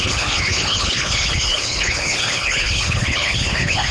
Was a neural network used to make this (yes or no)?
yes